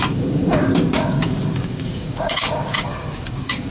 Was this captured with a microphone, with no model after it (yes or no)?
no